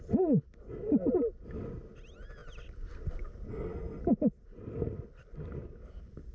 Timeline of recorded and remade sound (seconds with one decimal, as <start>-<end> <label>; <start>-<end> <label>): 0.0-3.5 recorded; 3.5-4.0 remade; 4.0-6.3 recorded